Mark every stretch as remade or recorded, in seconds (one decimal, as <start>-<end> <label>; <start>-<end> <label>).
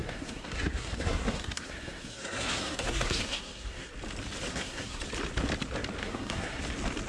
0.0-3.9 remade; 3.9-4.5 recorded; 4.5-5.0 remade; 5.0-6.0 recorded; 6.0-6.6 remade; 6.6-7.1 recorded